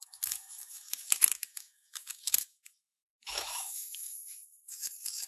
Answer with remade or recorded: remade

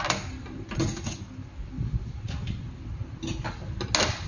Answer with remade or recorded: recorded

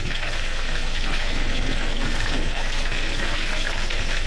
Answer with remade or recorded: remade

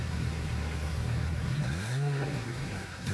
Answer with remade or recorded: remade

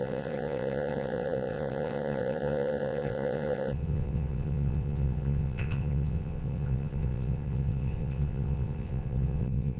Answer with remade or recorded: remade